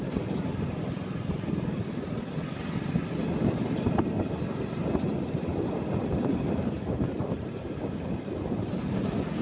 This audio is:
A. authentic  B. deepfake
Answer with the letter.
A